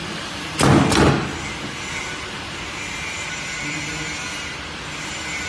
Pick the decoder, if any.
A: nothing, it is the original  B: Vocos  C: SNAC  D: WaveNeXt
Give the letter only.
A